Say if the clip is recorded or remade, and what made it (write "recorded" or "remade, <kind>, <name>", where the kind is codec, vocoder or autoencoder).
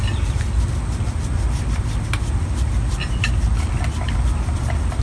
recorded